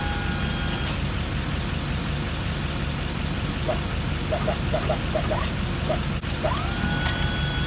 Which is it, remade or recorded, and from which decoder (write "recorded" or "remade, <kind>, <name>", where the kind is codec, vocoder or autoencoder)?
recorded